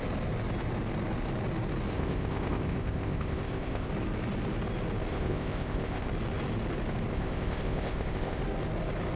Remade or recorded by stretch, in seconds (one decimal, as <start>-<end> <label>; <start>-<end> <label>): 0.0-1.9 recorded; 1.9-3.9 remade; 3.9-5.1 recorded; 5.1-6.1 remade; 6.1-7.1 recorded; 7.1-8.4 remade; 8.4-9.2 recorded